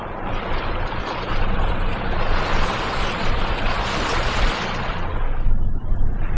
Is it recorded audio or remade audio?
remade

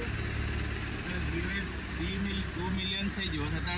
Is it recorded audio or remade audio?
recorded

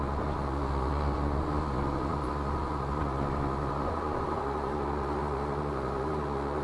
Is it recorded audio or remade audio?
remade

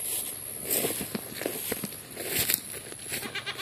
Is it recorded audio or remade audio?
recorded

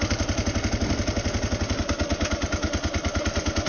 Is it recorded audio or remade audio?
recorded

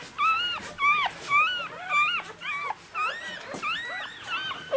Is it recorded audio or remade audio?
recorded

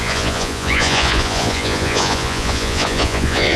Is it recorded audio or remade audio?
remade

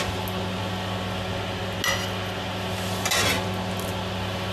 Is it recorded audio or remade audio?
recorded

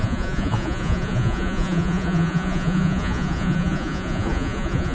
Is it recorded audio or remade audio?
remade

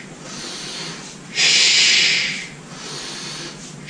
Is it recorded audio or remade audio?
recorded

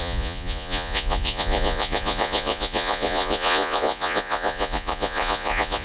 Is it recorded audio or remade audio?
remade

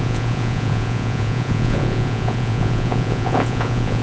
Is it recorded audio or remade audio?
remade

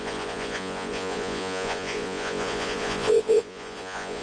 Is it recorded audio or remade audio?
remade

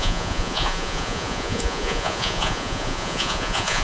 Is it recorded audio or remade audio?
remade